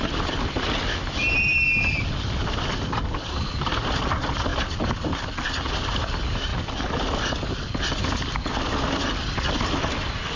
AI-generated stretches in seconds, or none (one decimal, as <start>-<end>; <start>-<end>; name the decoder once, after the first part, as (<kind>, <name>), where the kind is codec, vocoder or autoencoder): 0.0-4.5 (vocoder, BigVGAN v2); 5.5-6.5; 9.9-10.4